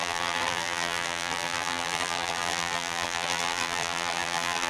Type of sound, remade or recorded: remade